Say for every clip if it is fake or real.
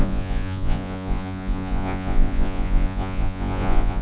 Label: fake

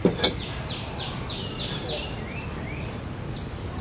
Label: real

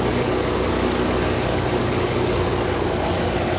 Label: fake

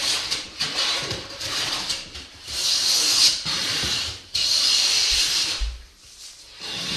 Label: fake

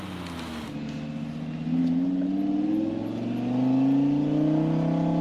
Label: real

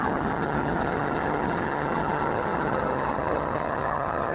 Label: fake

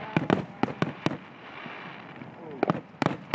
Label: fake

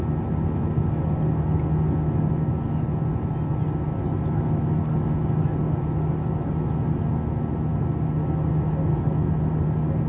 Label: real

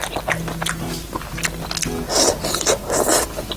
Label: real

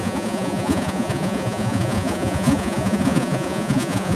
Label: fake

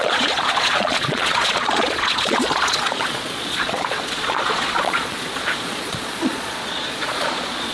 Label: fake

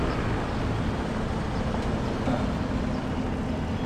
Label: real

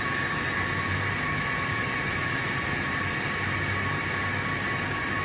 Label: real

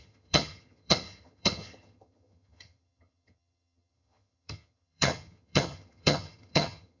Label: fake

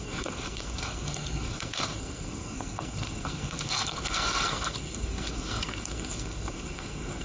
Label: fake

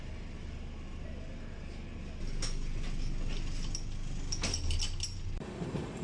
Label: real